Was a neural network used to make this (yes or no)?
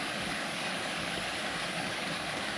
yes